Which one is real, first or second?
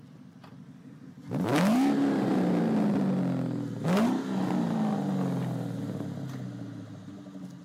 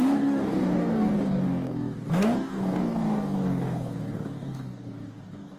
first